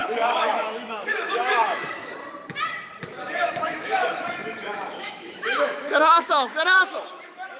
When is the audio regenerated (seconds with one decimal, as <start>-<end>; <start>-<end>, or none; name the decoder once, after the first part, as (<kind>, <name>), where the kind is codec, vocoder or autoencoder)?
0.0-2.1 (autoencoder, DAC-VAE); 3.1-7.6